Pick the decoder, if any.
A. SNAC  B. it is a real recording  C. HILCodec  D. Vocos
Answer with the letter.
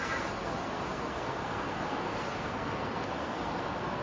A